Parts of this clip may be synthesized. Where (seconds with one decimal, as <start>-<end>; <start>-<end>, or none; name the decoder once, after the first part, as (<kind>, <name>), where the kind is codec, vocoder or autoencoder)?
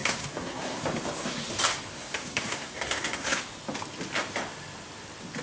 0.0-0.8 (codec, SNAC); 1.9-3.4